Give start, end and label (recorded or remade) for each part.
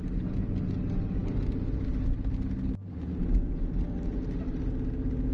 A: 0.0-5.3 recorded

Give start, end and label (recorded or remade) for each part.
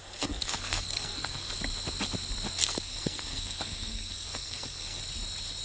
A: 0.0-1.5 remade; 1.5-2.6 recorded; 2.6-5.0 remade; 5.0-5.6 recorded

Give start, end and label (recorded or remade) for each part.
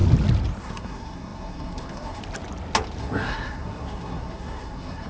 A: 0.0-0.6 recorded; 0.6-2.2 remade; 2.2-3.0 recorded; 3.0-5.1 remade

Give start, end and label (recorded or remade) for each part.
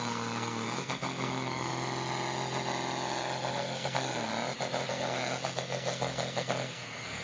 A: 0.0-1.7 remade; 1.7-3.5 recorded; 3.5-4.3 remade; 4.3-4.9 recorded; 4.9-7.2 remade